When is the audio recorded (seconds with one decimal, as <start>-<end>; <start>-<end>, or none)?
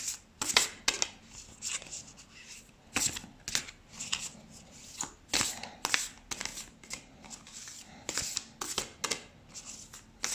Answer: 0.0-6.5; 7.1-10.3